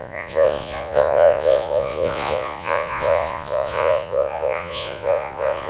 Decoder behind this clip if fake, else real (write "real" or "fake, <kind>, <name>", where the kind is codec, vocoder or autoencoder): fake, vocoder, Vocos